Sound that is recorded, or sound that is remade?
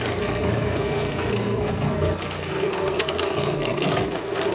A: remade